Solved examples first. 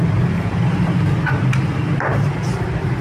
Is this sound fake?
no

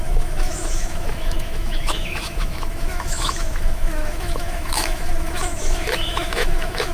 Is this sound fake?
yes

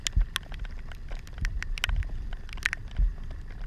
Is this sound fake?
no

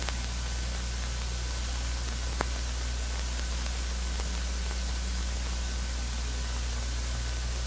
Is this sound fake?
no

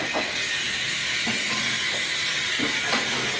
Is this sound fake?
no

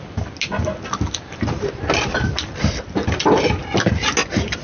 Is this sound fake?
no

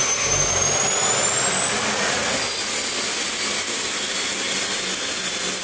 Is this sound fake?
no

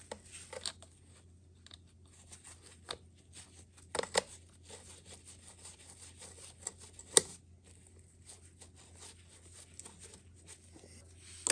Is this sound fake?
no